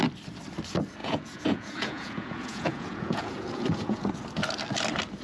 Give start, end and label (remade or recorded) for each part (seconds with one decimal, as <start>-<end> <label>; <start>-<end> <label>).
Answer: 0.0-1.0 recorded; 1.0-4.1 remade; 4.1-5.2 recorded